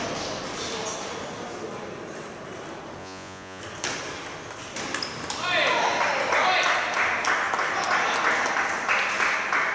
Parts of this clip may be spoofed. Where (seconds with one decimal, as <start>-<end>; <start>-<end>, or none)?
3.0-3.6

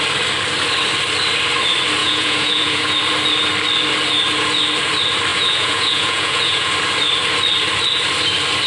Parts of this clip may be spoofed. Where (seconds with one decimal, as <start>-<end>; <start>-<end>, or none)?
2.0-3.0; 5.3-6.7

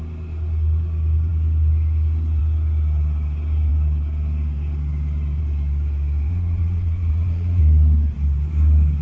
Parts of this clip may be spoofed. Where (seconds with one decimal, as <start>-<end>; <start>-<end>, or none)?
6.3-7.6

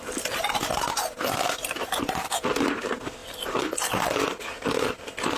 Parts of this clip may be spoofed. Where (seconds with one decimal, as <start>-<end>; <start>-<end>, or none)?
none

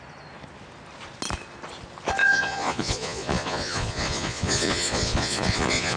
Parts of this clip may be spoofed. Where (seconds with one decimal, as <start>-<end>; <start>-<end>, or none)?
2.2-6.0

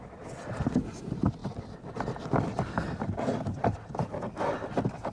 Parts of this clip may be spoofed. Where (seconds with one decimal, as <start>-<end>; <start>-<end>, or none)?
none

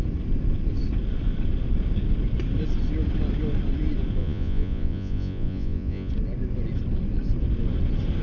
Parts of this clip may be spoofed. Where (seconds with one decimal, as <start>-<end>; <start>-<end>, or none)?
4.2-6.1

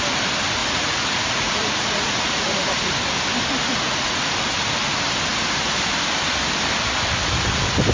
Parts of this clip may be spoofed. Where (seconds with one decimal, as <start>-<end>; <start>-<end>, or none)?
0.6-2.9; 3.7-4.3